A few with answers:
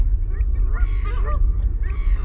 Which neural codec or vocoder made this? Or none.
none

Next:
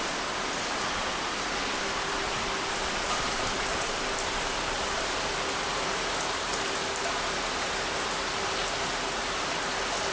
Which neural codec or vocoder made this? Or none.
none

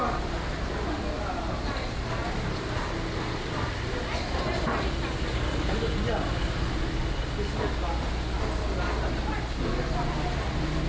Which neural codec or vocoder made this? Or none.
none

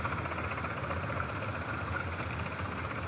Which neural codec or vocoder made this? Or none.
none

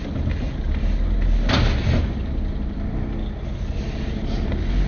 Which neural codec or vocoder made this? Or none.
none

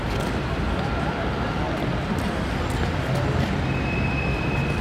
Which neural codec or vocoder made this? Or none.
none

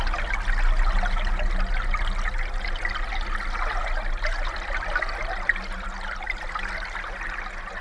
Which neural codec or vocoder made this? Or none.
none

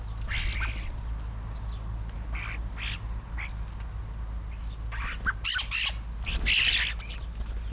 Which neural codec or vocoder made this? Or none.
none